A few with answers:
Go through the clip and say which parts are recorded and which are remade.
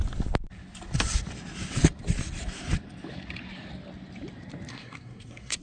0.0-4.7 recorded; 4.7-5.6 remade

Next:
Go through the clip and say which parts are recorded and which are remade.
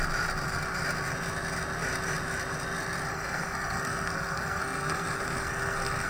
0.0-3.1 recorded; 3.1-6.1 remade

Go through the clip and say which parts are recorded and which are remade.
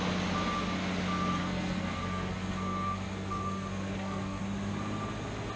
0.0-1.4 recorded; 1.4-4.4 remade; 4.4-5.6 recorded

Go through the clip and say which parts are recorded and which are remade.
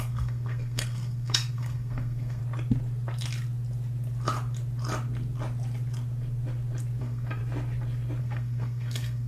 0.0-2.4 remade; 2.4-7.0 recorded; 7.0-7.4 remade; 7.4-8.2 recorded; 8.2-9.3 remade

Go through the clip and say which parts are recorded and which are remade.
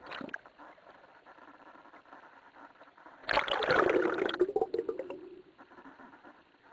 0.0-6.7 recorded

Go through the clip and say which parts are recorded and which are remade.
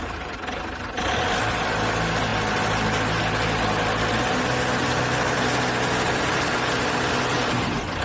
0.0-8.0 recorded